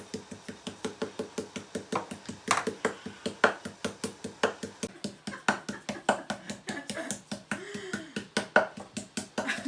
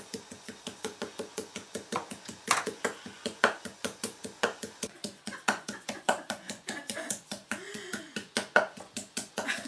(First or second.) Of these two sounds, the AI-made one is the second